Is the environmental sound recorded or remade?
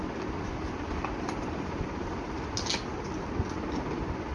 recorded